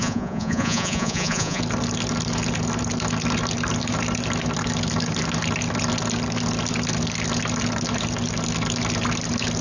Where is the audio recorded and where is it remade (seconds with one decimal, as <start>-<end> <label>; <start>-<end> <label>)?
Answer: 0.0-1.6 remade; 1.6-9.6 recorded